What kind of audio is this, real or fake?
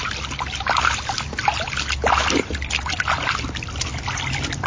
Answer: real